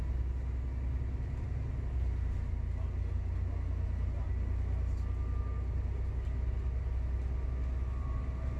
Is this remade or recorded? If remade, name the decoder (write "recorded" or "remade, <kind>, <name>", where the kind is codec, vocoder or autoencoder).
recorded